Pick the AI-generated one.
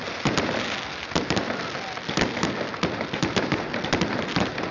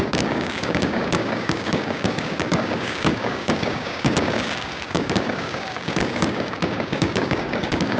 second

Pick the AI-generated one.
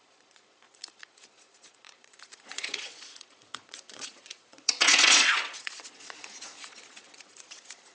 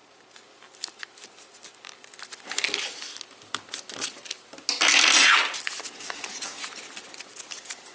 first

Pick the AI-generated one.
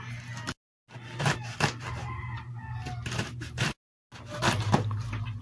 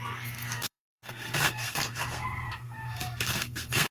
second